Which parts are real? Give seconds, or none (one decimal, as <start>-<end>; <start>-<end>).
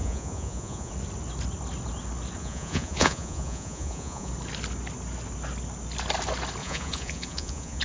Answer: 0.9-2.4; 4.3-6.6